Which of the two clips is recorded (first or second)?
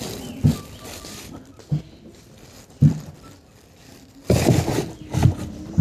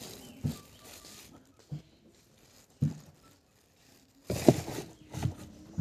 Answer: second